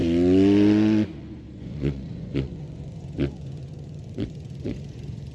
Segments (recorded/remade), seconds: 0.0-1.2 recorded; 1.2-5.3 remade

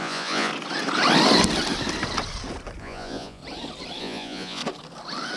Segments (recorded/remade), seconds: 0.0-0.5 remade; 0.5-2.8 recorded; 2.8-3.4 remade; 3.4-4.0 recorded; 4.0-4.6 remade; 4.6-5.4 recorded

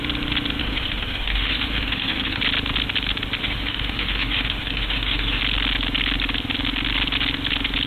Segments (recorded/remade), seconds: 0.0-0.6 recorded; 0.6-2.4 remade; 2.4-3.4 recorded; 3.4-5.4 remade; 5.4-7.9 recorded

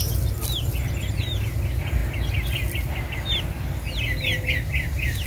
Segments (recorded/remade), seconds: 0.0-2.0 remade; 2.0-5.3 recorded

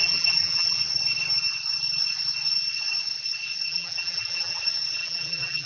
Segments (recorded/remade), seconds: 0.0-0.8 remade; 0.8-3.7 recorded; 3.7-4.6 remade; 4.6-5.0 recorded; 5.0-5.7 remade

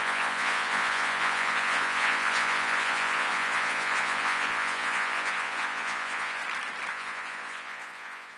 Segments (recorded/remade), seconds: 0.0-6.4 remade; 6.4-6.9 recorded; 6.9-8.4 remade

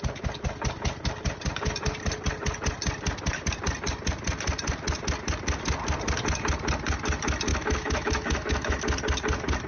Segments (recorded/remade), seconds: 0.0-7.5 recorded; 7.5-8.7 remade; 8.7-9.7 recorded